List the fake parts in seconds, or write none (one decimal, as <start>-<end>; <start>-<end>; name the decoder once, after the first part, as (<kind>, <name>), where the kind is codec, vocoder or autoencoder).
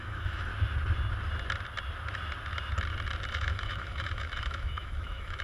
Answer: 0.0-0.5 (autoencoder, DAC-VAE); 3.3-5.4